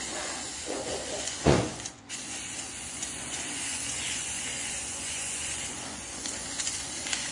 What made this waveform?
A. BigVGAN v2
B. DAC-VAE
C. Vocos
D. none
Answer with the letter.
C